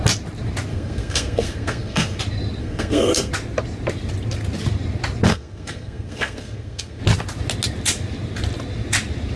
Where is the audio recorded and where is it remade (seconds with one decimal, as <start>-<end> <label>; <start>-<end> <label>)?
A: 0.0-0.7 recorded; 0.7-2.2 remade; 2.2-2.6 recorded; 2.6-3.3 remade; 3.3-5.3 recorded; 5.3-7.0 remade; 7.0-9.4 recorded